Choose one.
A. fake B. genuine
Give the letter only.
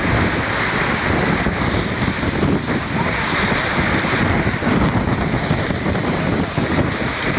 B